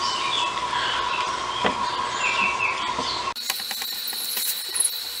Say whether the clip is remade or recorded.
recorded